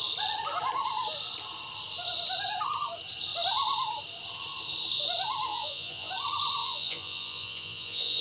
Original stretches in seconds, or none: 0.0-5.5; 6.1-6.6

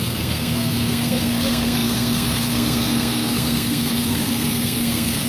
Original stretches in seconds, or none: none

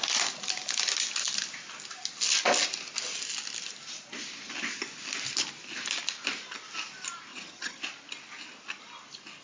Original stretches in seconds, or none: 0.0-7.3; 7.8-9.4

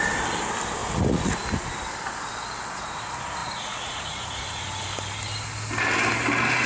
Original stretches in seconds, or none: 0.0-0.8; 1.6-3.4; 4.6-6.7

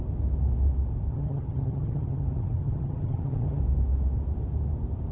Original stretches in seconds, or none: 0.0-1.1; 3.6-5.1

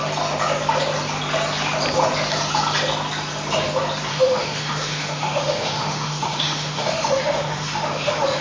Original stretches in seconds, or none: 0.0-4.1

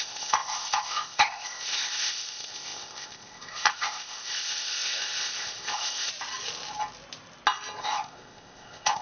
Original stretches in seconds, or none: 6.1-7.8